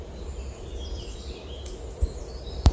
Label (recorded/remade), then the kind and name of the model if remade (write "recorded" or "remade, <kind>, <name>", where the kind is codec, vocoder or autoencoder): remade, vocoder, BigVGAN v2